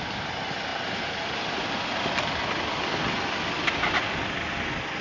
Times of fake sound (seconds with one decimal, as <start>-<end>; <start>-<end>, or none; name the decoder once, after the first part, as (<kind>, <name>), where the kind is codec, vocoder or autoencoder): none